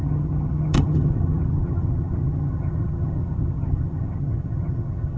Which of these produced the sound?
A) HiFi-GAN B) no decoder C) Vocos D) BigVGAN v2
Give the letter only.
A